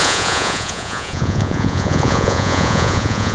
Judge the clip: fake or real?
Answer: fake